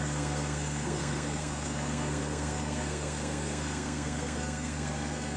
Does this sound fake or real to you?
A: fake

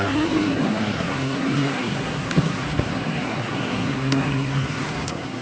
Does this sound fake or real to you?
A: fake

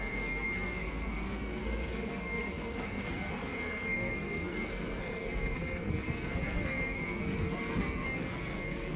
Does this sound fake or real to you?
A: fake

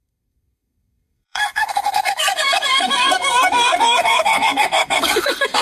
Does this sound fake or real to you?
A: fake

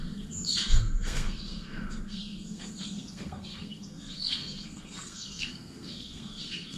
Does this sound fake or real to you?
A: fake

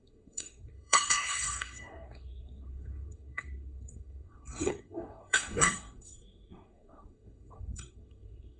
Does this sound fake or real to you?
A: fake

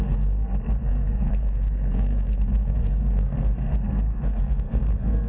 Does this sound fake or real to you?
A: fake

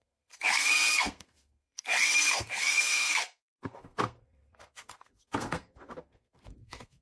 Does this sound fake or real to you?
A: fake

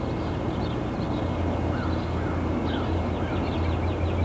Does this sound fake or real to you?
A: real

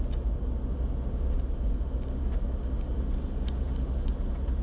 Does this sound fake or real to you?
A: real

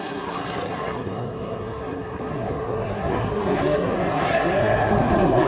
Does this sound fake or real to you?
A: fake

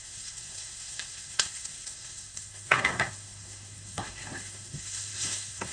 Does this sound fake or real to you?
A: fake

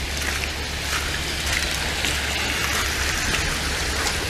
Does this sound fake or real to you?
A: real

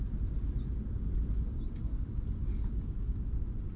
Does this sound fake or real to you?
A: real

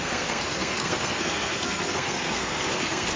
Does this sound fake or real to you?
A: fake